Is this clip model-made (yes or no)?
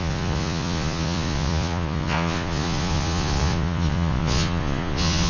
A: yes